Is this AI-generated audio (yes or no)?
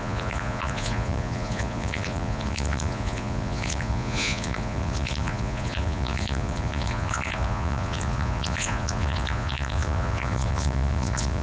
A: yes